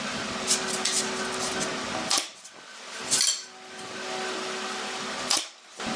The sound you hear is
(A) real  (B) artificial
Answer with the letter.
A